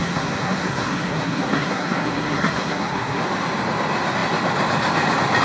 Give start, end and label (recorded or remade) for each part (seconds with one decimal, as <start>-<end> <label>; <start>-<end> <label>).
0.0-3.2 remade; 3.2-5.4 recorded